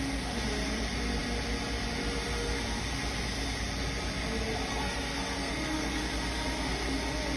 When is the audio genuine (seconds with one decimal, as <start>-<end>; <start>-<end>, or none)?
0.0-4.7; 6.0-7.4